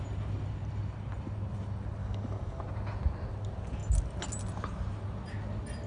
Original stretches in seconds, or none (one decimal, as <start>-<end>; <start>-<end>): 0.0-2.0; 2.6-5.9